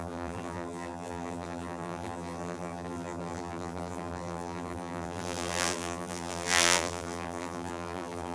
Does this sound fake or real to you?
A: fake